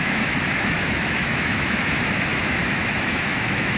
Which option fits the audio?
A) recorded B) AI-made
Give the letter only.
B